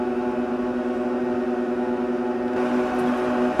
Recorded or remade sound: recorded